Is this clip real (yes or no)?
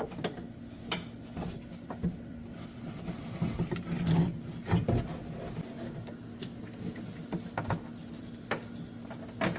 yes